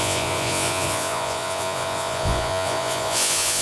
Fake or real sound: fake